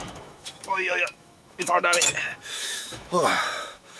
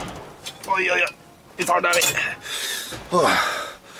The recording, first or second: second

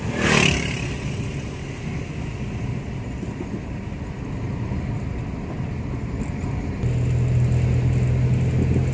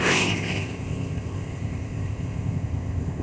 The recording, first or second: first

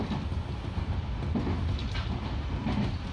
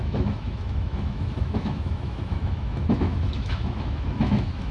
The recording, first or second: first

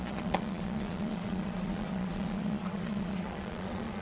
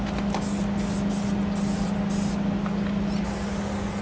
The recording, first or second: second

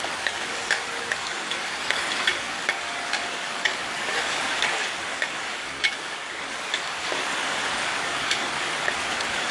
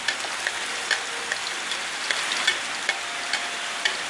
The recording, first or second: second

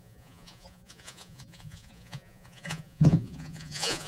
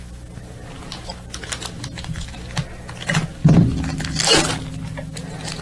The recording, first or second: second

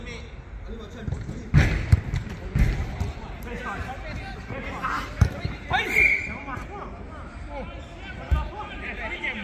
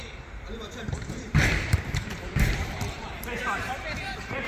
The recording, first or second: first